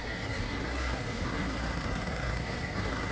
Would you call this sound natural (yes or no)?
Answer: no